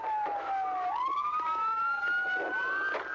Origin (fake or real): real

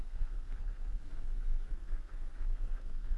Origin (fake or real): fake